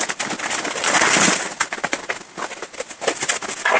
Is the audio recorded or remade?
recorded